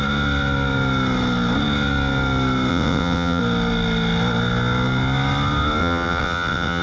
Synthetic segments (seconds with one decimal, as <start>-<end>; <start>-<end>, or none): 2.7-3.4; 5.8-6.8